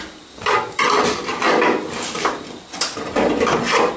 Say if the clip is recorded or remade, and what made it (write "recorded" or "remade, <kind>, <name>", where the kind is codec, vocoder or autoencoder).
remade, vocoder, BigVGAN v2